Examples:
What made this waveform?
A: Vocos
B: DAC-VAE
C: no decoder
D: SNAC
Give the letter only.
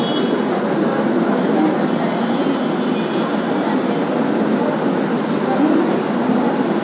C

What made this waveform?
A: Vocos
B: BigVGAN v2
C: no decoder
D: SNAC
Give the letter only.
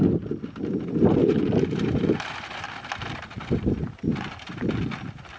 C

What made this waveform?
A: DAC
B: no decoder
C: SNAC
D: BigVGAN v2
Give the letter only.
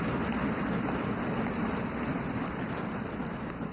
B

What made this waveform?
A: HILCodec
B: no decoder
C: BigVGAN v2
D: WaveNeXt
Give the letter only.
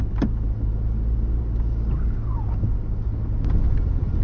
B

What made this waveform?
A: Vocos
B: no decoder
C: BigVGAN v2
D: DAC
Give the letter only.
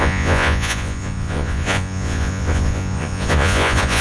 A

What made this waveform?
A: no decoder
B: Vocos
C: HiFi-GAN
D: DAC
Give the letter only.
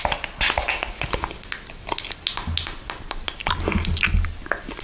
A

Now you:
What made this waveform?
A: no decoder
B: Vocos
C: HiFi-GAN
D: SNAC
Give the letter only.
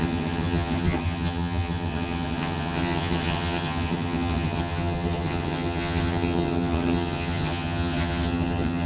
C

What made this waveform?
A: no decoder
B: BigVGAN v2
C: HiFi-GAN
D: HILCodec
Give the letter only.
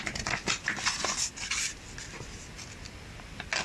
A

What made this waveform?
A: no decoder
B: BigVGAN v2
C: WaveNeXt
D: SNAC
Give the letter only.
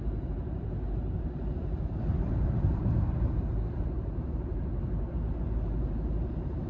B